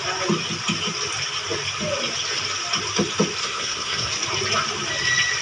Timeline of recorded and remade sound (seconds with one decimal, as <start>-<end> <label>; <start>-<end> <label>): 0.0-3.4 recorded; 3.4-4.1 remade; 4.1-5.4 recorded